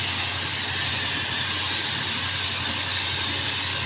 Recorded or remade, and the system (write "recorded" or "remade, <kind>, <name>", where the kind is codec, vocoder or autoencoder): recorded